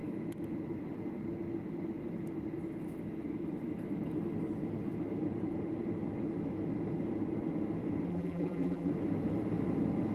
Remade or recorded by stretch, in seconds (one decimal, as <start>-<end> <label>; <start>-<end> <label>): 0.0-8.1 recorded; 8.1-8.9 remade; 8.9-10.1 recorded